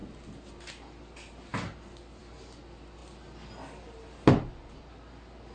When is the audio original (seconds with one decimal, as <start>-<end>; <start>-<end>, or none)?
0.0-5.5

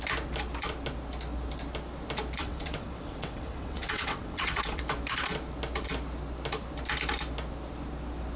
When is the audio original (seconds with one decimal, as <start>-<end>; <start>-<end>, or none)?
0.0-2.4; 4.8-8.4

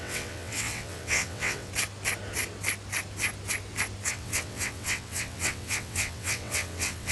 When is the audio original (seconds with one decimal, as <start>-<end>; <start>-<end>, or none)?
1.7-4.1

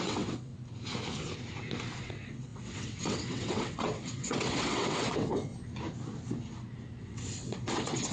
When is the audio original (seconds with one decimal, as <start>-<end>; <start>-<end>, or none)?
0.5-2.0; 5.5-7.0

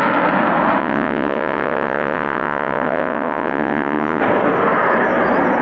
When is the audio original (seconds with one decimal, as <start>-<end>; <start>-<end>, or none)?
0.0-0.8; 4.2-5.6

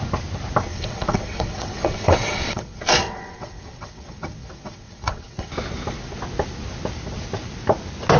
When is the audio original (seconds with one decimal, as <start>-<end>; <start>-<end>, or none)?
0.0-0.7; 5.5-8.2

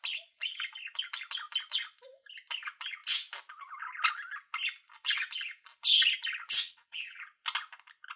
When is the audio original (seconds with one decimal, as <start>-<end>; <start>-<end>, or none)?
0.0-6.6; 7.2-8.2